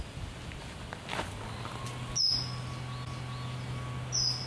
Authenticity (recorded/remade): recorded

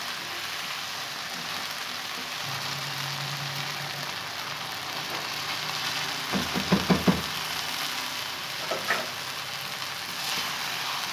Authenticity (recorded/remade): recorded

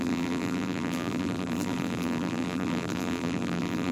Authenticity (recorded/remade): remade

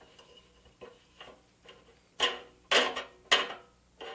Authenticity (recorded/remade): recorded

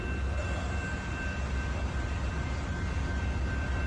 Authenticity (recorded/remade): recorded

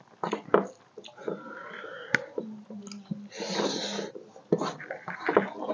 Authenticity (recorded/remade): recorded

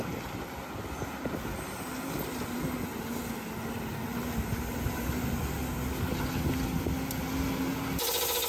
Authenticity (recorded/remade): recorded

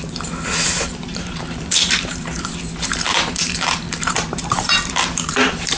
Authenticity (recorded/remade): remade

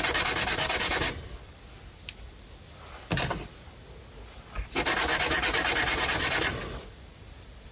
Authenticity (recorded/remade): recorded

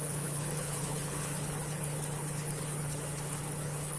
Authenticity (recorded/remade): remade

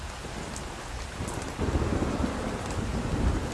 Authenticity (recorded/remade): recorded